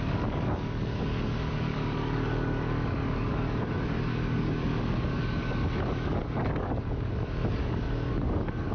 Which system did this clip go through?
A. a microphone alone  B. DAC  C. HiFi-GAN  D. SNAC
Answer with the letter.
B